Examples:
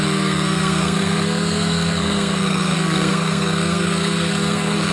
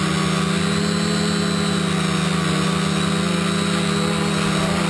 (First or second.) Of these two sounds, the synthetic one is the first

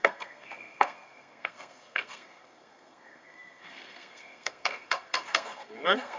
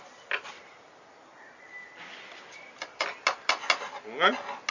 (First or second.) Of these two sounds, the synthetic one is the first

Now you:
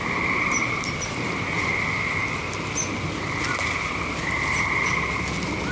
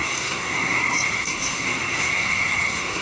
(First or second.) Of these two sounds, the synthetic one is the second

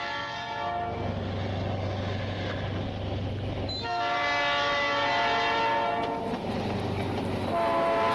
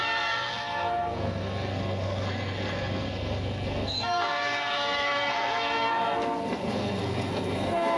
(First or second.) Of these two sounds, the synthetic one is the second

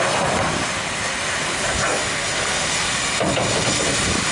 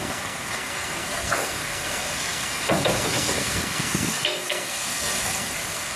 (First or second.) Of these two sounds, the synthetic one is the second